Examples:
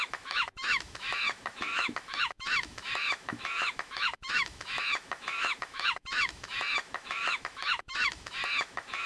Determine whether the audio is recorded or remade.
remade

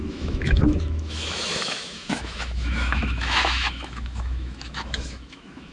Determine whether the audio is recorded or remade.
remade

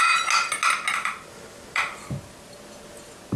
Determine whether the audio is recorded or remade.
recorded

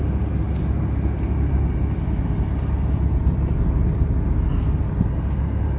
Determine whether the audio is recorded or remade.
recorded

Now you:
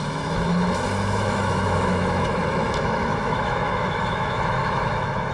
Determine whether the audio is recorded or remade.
remade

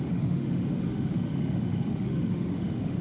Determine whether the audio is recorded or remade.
remade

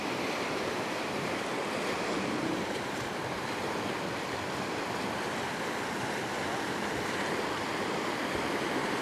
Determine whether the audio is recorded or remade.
recorded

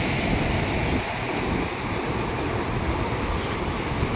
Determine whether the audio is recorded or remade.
recorded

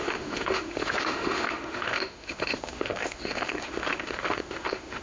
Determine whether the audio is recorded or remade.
remade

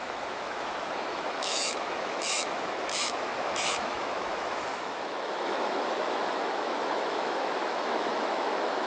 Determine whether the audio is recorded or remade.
remade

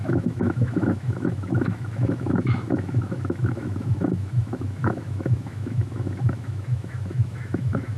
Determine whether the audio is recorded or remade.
remade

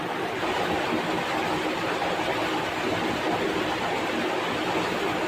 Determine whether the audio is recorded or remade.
recorded